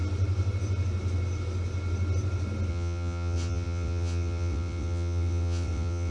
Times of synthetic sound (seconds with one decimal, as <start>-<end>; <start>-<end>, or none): 2.7-6.1